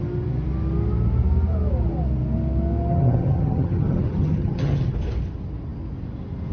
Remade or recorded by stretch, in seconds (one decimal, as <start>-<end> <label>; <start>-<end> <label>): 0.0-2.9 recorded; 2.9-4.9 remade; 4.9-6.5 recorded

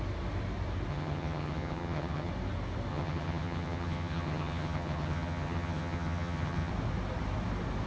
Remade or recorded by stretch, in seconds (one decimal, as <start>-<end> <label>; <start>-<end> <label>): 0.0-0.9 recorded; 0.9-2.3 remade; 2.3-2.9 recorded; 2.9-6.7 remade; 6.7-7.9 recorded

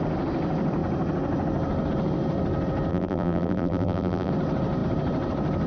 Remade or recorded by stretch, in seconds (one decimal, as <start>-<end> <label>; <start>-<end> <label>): 0.0-2.9 recorded; 2.9-4.3 remade; 4.3-5.7 recorded